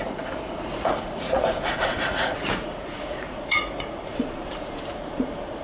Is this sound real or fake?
fake